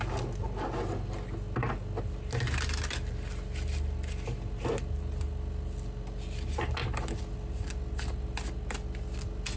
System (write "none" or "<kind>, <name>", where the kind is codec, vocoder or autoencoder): none